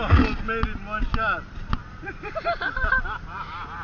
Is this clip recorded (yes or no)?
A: yes